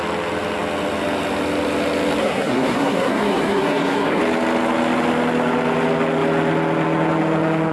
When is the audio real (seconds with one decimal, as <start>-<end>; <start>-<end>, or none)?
0.0-2.2; 4.2-7.7